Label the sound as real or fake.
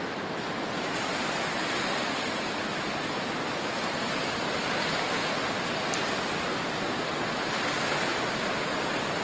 real